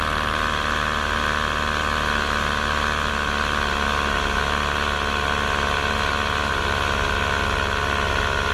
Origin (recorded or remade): recorded